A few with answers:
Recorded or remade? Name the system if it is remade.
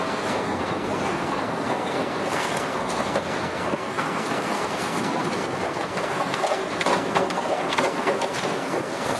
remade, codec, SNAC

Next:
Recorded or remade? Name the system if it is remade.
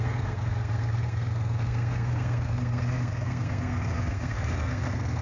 remade, codec, SNAC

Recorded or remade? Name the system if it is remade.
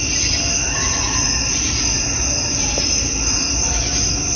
recorded